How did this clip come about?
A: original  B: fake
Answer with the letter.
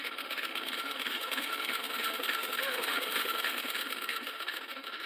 B